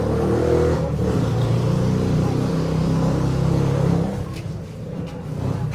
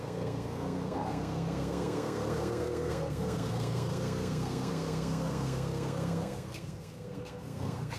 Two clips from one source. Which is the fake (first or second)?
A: second